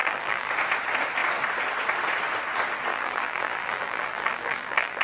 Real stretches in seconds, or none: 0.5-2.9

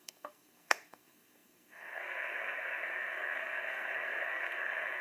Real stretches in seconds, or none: none

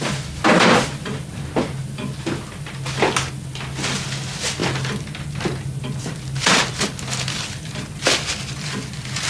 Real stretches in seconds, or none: 0.0-9.3

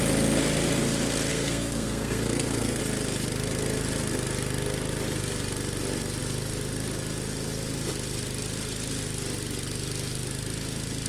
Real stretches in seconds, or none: 0.0-1.3; 2.8-11.1

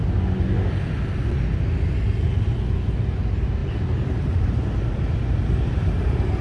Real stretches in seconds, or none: 0.0-3.6; 5.0-6.4